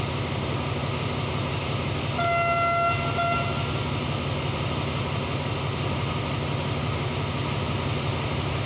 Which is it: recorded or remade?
recorded